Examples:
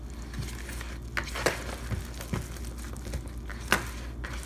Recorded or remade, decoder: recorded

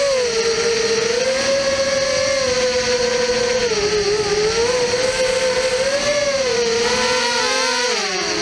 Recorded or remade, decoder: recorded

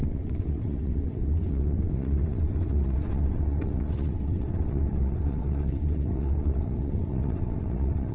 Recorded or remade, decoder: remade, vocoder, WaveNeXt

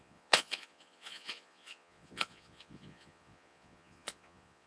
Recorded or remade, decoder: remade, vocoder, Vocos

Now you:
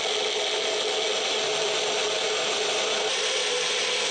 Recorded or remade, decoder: recorded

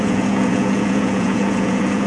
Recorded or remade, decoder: remade, vocoder, Vocos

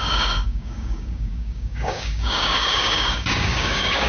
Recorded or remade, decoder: remade, codec, DAC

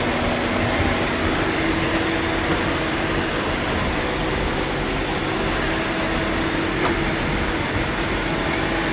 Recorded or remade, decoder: recorded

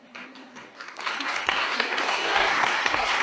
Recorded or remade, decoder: remade, codec, SNAC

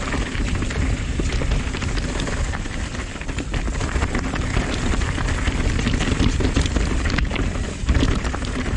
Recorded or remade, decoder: recorded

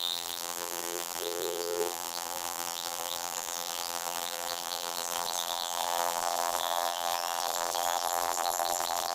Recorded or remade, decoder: remade, vocoder, BigVGAN v2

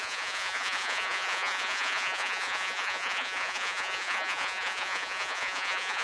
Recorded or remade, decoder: remade, vocoder, Vocos